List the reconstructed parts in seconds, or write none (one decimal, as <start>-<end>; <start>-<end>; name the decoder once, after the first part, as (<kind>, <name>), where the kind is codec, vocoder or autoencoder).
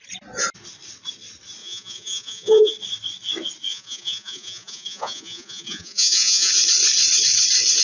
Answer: 1.6-2.7 (vocoder, Vocos); 3.7-6.5